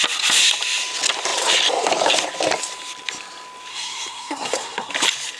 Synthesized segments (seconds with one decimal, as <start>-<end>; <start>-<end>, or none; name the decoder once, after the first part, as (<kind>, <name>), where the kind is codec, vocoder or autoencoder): 3.7-4.9 (codec, SNAC)